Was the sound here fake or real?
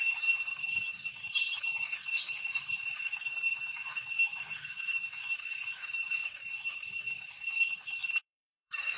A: fake